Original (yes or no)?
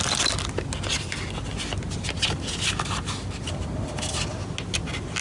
yes